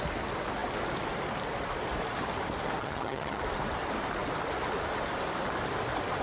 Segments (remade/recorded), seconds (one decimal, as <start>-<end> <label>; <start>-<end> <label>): 0.0-2.8 recorded; 2.8-3.4 remade; 3.4-6.2 recorded